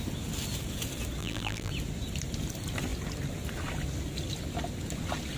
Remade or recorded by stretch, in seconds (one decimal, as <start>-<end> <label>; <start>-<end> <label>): 0.0-1.2 recorded; 1.2-1.7 remade; 1.7-5.4 recorded